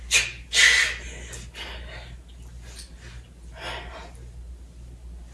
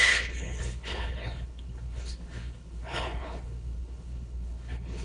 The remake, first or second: second